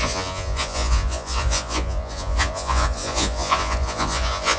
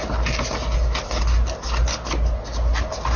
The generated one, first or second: first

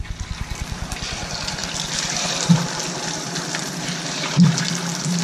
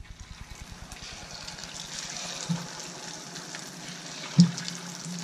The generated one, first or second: first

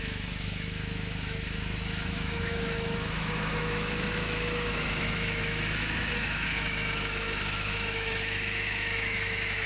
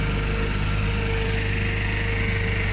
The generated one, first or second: first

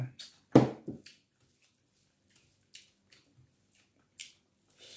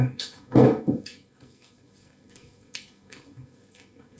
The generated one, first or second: second